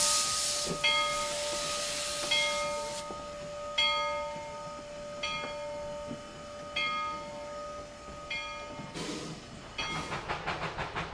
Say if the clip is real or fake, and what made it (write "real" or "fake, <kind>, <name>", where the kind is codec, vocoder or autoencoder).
real